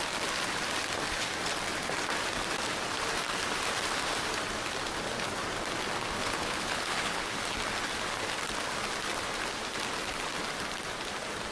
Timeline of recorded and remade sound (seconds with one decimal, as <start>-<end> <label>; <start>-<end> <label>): 0.0-6.2 recorded; 6.2-7.3 remade; 7.3-11.5 recorded